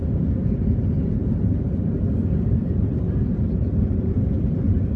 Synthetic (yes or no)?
yes